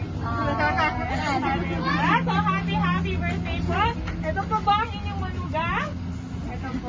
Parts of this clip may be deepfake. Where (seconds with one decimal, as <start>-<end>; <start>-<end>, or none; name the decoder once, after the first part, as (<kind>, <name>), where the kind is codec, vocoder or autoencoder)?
none